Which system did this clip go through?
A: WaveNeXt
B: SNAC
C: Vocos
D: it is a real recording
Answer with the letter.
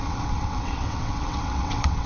A